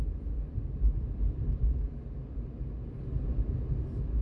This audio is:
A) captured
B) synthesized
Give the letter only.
A